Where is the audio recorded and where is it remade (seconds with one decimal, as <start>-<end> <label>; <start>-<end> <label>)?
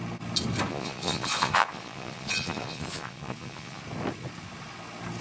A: 0.0-0.7 recorded; 0.7-3.8 remade; 3.8-5.2 recorded